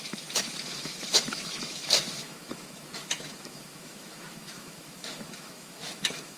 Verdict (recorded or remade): remade